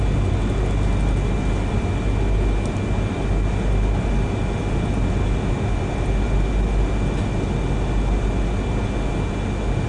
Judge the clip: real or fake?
real